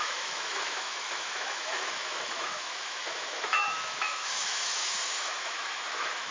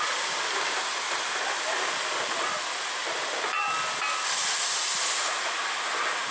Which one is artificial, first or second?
first